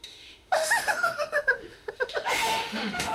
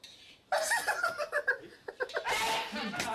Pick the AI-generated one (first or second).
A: first